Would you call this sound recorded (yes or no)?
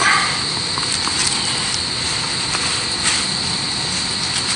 yes